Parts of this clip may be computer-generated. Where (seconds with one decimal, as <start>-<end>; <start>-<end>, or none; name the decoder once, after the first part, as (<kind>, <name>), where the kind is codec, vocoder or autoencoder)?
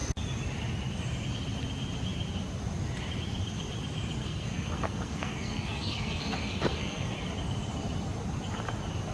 4.2-7.1 (codec, SNAC)